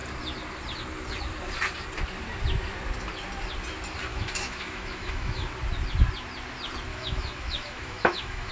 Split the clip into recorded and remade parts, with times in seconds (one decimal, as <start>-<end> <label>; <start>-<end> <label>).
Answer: 0.0-4.1 recorded; 4.1-5.5 remade; 5.5-6.9 recorded; 6.9-8.5 remade